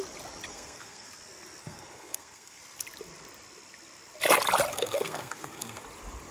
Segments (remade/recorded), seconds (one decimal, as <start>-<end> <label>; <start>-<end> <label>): 0.0-0.5 recorded; 0.5-1.1 remade; 1.1-1.6 recorded; 1.6-2.6 remade; 2.6-4.7 recorded; 4.7-5.8 remade; 5.8-6.3 recorded